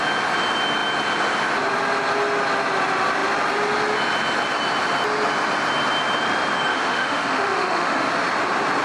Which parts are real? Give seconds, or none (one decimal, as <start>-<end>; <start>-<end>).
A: 0.0-6.7; 8.1-8.8